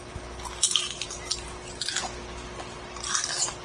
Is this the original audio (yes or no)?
yes